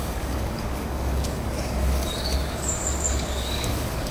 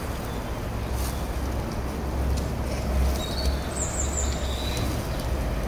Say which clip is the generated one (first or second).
first